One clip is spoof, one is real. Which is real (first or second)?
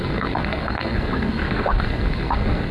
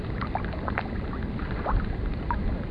second